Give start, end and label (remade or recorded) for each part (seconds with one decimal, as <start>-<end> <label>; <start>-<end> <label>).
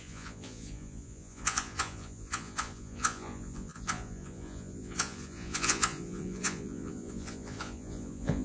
0.0-8.4 remade